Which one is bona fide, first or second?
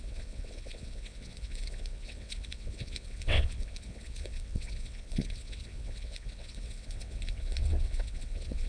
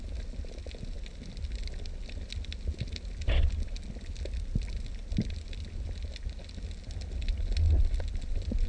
second